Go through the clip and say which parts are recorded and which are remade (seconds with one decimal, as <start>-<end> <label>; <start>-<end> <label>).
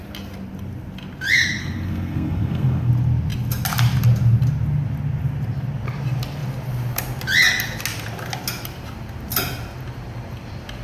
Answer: 0.0-1.6 recorded; 1.6-2.9 remade; 2.9-10.8 recorded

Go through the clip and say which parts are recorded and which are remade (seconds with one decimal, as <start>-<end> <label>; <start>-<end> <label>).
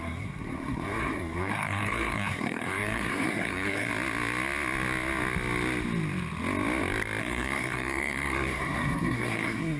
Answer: 0.0-3.9 remade; 3.9-7.2 recorded; 7.2-9.8 remade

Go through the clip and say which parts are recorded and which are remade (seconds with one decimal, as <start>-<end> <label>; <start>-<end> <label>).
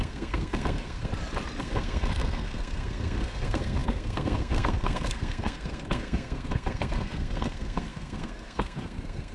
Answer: 0.0-1.1 remade; 1.1-1.6 recorded; 1.6-9.3 remade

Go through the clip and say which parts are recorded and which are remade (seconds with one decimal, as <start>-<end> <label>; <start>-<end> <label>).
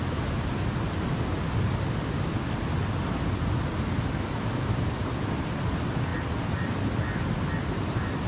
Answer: 0.0-8.3 recorded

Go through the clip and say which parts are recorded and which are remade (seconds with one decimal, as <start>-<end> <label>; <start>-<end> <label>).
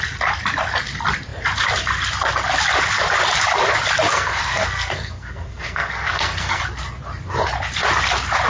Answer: 0.0-4.1 recorded; 4.1-6.6 remade; 6.6-8.5 recorded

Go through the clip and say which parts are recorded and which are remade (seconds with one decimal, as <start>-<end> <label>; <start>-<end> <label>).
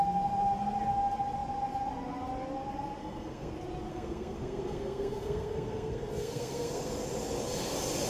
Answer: 0.0-3.0 recorded; 3.0-3.5 remade; 3.5-3.9 recorded; 3.9-6.9 remade; 6.9-8.1 recorded